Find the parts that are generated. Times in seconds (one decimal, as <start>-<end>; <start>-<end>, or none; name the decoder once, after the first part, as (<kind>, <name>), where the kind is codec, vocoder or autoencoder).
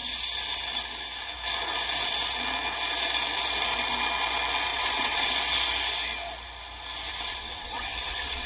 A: 4.7-5.3 (vocoder, WaveNeXt); 7.1-8.5